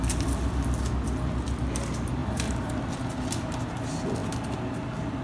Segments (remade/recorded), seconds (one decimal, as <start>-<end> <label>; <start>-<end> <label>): 0.0-2.2 recorded; 2.2-2.7 remade; 2.7-5.2 recorded